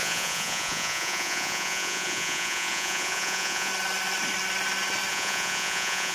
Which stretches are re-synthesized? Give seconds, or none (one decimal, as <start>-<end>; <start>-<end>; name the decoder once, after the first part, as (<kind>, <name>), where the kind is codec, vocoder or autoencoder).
0.0-3.7 (vocoder, Vocos); 5.1-6.1